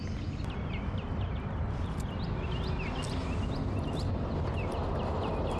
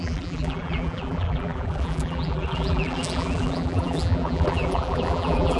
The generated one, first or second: second